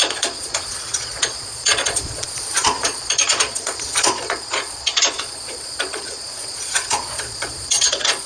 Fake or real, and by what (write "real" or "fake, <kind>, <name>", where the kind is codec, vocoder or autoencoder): fake, vocoder, Vocos